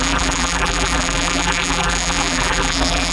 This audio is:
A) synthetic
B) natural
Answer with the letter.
A